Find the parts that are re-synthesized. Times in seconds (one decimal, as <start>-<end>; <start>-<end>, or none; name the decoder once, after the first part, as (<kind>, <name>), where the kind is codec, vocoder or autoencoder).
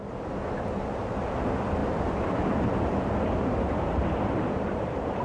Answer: 1.8-5.2 (vocoder, BigVGAN v2)